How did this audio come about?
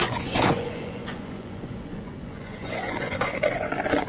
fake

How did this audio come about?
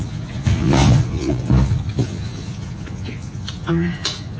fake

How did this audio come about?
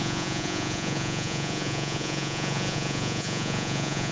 fake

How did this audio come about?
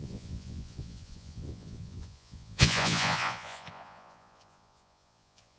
fake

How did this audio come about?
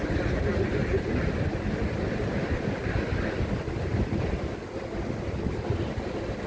real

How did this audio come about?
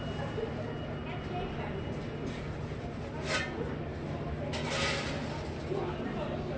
real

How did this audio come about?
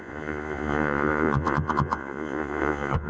fake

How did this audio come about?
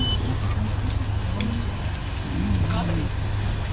real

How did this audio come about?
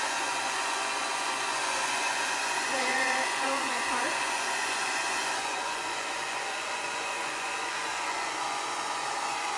fake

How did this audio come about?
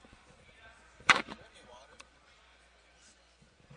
fake